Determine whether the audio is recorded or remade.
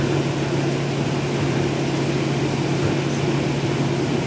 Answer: recorded